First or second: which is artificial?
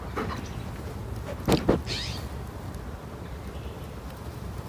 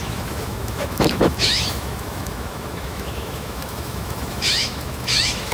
second